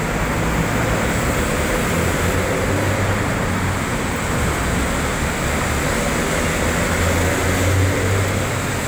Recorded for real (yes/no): yes